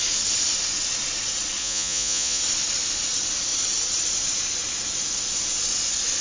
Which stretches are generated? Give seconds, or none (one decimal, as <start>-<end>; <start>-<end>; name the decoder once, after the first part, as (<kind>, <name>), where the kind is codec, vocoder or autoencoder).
1.6-2.4 (vocoder, Vocos)

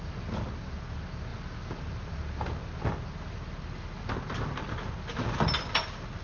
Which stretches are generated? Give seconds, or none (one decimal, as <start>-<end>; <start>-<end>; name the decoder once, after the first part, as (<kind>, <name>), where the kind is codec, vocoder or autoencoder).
none

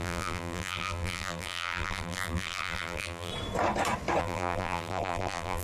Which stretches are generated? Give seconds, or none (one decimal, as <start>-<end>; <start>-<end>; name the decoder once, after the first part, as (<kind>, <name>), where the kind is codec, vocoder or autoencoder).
0.0-3.3 (vocoder, BigVGAN v2); 4.2-5.6

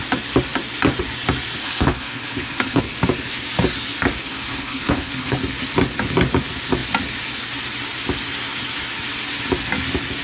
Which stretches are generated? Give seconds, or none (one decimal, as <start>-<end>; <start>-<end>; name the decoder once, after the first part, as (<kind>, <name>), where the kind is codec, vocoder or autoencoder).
1.6-2.8 (codec, HILCodec); 4.2-5.4

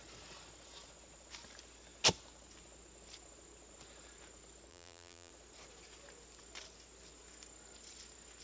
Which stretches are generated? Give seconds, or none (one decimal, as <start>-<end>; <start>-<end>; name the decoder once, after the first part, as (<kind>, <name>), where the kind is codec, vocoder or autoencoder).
4.7-5.3 (vocoder, BigVGAN v2)

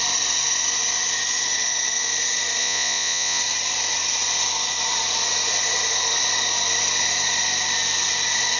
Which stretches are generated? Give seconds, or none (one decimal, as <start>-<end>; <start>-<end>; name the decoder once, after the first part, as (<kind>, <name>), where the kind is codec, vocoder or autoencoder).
2.6-3.4 (vocoder, Vocos)